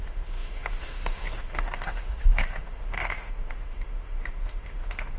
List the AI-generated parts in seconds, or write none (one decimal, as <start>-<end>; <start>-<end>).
0.0-5.2